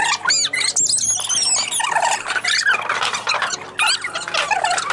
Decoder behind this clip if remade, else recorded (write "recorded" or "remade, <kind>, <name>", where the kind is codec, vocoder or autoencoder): recorded